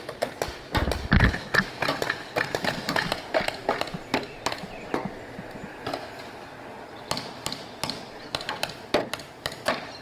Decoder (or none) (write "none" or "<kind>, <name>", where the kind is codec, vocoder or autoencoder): none